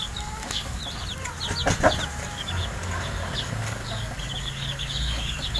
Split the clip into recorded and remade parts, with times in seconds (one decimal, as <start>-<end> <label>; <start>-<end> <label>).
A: 0.0-0.8 remade; 0.8-2.3 recorded; 2.3-5.6 remade